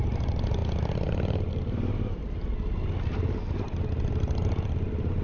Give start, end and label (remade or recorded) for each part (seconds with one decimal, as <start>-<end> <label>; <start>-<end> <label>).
0.0-0.6 remade; 0.6-1.5 recorded; 1.5-2.2 remade; 2.2-3.0 recorded; 3.0-5.2 remade